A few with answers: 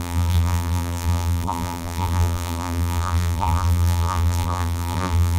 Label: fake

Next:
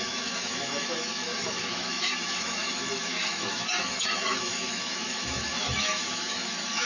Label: fake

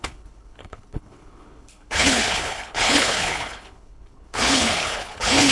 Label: fake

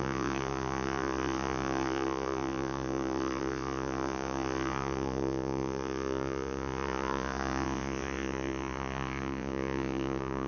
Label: fake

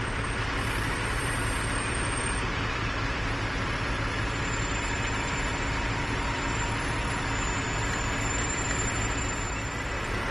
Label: fake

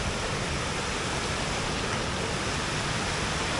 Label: real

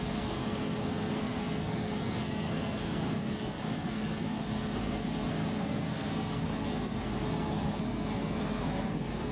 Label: fake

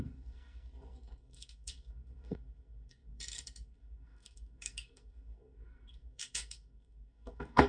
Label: fake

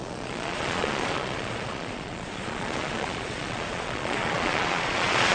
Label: fake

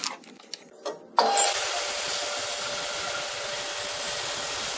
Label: real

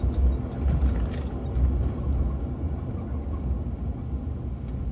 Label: real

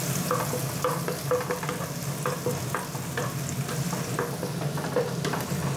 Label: real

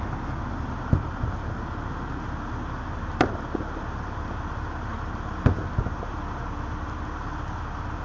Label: real